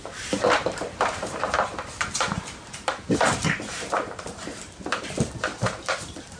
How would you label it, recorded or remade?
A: remade